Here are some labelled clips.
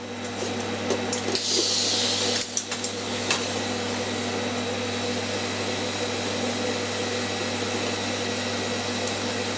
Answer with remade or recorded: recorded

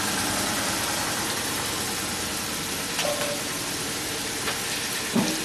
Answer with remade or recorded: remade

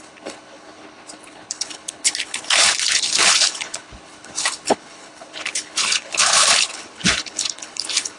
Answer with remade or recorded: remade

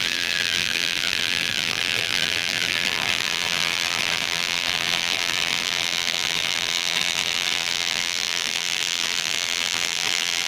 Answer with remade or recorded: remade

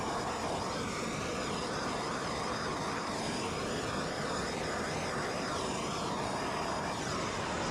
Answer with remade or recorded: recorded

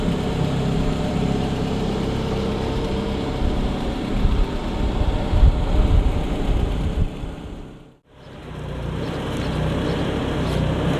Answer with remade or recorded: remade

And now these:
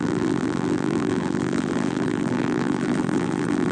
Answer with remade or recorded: remade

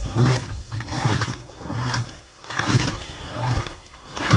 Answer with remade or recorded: remade